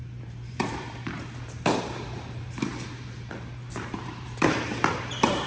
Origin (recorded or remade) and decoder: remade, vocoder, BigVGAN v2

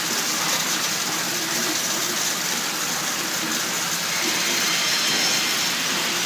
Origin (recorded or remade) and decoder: recorded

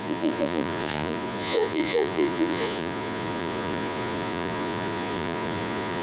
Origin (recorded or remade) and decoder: remade, vocoder, Vocos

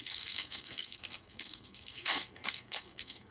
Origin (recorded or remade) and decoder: remade, codec, SNAC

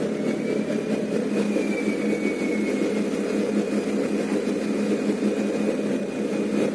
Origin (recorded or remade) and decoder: recorded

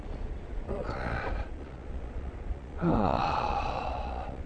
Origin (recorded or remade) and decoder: remade, vocoder, Vocos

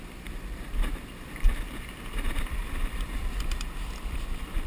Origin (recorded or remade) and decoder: remade, vocoder, BigVGAN v2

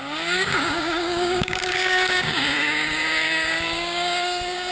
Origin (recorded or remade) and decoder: remade, codec, DAC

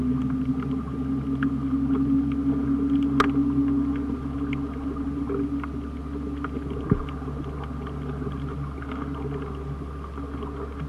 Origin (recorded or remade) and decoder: recorded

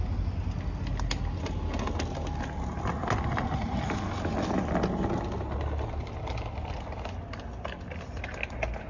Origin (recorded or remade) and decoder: recorded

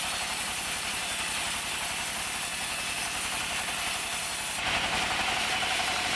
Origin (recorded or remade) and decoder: recorded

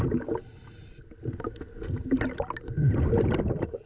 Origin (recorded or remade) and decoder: recorded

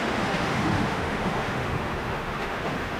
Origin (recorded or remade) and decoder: remade, autoencoder, DAC-VAE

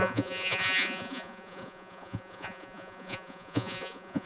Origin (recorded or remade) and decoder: remade, vocoder, Vocos